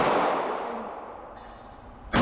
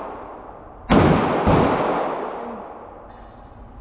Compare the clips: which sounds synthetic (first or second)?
first